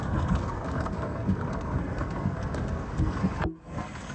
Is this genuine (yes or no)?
no